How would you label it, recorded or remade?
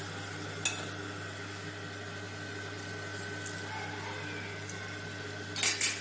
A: recorded